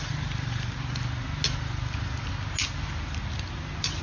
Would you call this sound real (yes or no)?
yes